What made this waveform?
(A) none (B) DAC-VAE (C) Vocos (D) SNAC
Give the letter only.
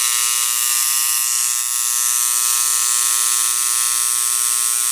A